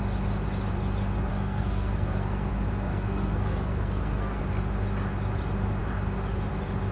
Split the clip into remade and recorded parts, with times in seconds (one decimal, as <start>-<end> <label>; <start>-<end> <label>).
0.0-1.3 recorded; 1.3-2.5 remade; 2.5-2.9 recorded; 2.9-4.4 remade; 4.4-6.9 recorded